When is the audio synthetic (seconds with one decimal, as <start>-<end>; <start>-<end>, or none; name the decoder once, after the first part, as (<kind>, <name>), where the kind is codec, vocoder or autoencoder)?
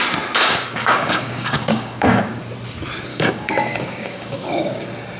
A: 0.4-2.4 (codec, DAC); 3.1-4.8